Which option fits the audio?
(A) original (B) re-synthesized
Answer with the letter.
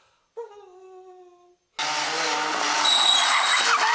A